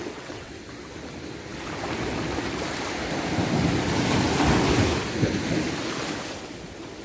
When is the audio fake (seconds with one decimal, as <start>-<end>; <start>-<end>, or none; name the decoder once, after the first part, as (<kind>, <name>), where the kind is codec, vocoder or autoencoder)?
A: 0.0-0.5 (vocoder, WaveNeXt)